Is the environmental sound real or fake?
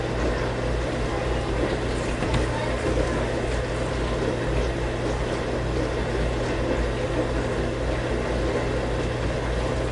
real